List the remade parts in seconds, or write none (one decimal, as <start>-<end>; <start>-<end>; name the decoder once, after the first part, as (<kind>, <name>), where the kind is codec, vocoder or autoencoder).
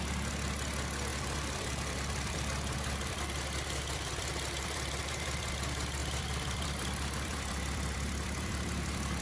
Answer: 1.1-5.5 (vocoder, BigVGAN v2); 6.0-9.2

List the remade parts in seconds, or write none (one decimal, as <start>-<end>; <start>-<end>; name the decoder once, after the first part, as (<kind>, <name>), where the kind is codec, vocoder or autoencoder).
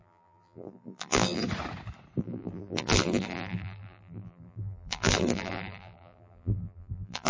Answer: 0.0-1.4 (vocoder, BigVGAN v2); 2.2-7.3